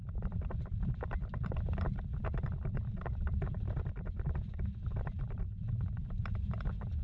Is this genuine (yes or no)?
no